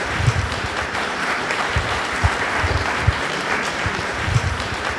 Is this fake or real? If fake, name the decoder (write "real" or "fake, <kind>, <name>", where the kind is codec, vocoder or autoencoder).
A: fake, vocoder, BigVGAN v2